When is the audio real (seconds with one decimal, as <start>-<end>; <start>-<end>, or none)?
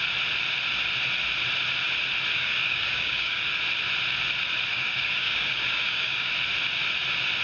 0.0-2.3; 3.6-4.7; 6.3-7.4